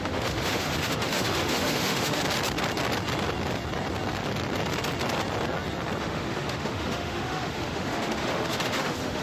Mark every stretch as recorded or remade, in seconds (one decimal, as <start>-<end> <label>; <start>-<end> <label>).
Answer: 0.0-2.2 remade; 2.2-6.0 recorded; 6.0-9.2 remade